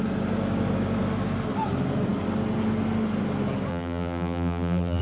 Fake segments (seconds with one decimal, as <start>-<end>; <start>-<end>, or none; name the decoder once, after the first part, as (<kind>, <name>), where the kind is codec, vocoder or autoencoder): 3.7-5.0 (vocoder, BigVGAN v2)